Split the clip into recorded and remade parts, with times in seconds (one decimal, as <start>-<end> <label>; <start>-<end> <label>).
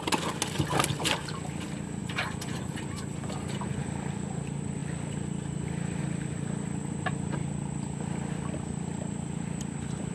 0.0-2.0 recorded; 2.0-2.7 remade; 2.7-10.1 recorded